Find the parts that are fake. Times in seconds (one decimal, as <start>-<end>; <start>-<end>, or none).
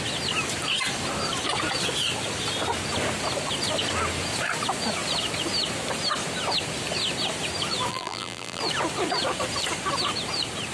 7.9-8.6